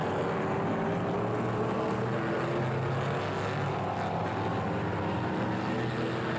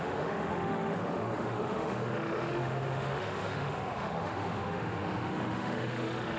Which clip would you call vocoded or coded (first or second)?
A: second